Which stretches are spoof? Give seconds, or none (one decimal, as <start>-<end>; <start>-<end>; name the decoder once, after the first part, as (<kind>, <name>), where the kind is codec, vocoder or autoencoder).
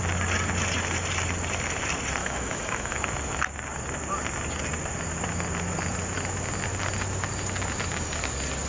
2.2-3.0 (autoencoder, DAC-VAE)